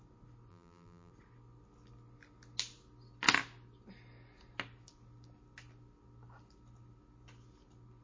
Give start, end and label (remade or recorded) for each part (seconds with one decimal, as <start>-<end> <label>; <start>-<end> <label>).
0.0-0.5 recorded; 0.5-1.1 remade; 1.1-8.0 recorded